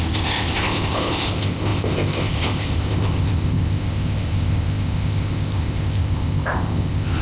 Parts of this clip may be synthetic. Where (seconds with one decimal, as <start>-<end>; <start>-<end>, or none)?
0.0-7.2